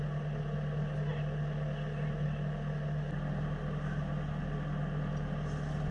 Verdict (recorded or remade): recorded